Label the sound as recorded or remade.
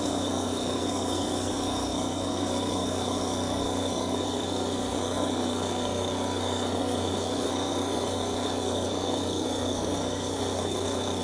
remade